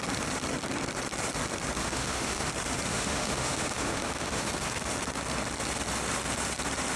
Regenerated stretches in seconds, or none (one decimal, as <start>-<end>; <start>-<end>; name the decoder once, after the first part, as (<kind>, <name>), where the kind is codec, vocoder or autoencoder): 1.8-2.5 (autoencoder, DAC-VAE); 2.9-4.5